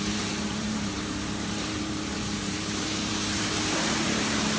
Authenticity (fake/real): fake